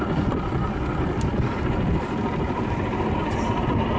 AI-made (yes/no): no